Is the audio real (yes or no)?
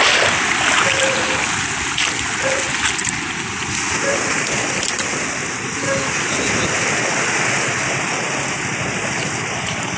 yes